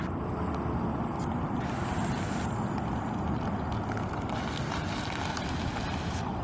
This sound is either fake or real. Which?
real